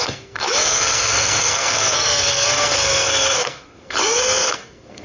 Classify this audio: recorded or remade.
remade